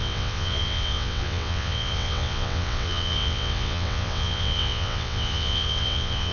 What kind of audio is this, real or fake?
fake